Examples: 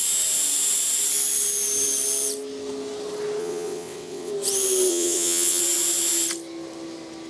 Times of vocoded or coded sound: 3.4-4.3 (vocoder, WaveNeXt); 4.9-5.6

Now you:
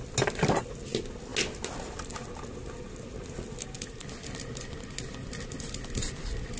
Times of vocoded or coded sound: none

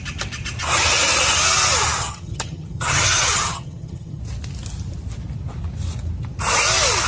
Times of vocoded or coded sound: 2.0-4.2 (vocoder, HiFi-GAN)

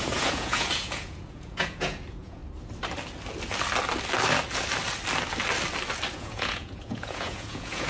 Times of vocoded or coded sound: 0.0-2.4 (vocoder, Vocos); 6.1-7.9

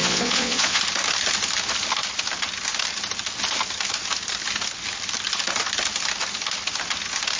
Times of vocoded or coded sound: 0.0-0.8 (vocoder, Vocos)